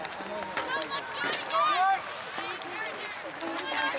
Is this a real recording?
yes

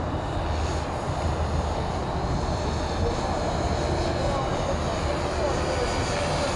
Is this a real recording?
yes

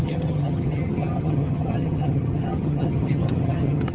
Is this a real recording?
no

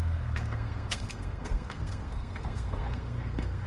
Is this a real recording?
no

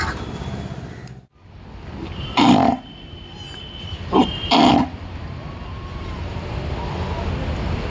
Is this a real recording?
yes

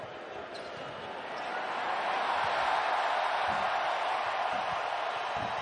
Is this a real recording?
yes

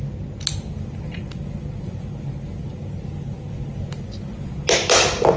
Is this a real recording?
yes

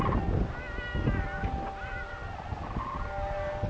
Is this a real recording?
yes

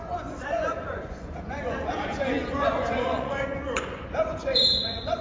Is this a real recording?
no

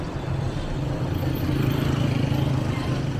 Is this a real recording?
yes